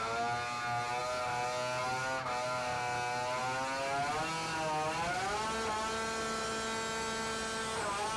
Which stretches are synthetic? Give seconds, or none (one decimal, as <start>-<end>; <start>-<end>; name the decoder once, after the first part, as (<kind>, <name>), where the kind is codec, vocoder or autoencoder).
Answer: none